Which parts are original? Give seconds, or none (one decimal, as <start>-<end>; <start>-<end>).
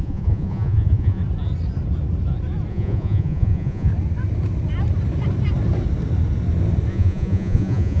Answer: 1.2-2.7; 3.9-6.9